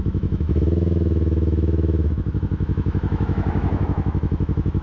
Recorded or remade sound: remade